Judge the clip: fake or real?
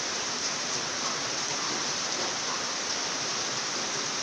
real